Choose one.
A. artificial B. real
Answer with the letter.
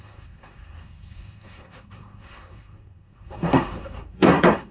A